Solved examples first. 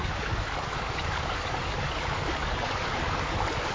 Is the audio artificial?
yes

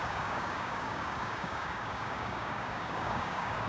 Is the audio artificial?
yes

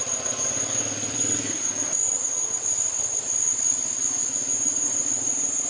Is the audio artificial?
no